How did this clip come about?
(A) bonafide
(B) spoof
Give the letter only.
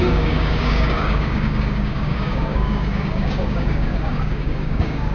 B